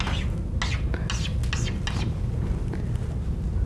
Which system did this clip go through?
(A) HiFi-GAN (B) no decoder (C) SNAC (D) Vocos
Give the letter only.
B